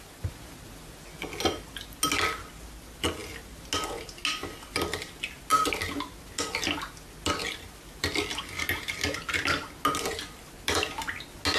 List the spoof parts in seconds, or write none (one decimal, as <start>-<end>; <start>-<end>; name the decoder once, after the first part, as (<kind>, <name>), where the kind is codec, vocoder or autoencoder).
none